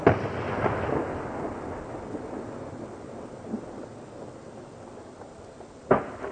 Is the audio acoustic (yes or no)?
yes